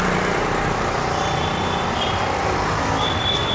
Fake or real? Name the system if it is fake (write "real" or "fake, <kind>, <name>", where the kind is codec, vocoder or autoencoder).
real